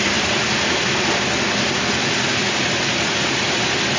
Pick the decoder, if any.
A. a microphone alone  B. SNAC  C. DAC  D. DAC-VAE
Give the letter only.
A